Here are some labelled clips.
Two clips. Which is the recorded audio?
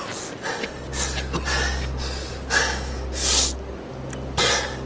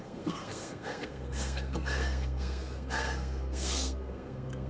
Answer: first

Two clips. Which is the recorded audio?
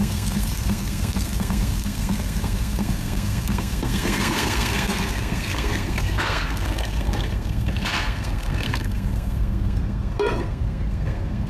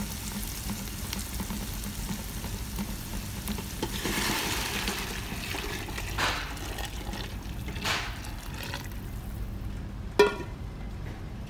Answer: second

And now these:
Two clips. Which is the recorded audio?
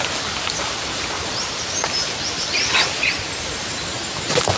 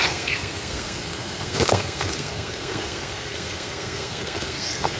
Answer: first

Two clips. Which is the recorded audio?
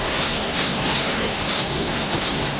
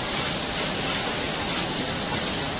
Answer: second